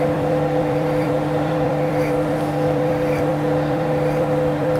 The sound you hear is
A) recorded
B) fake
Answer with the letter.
B